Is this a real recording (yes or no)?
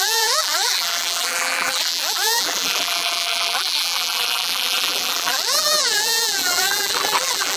no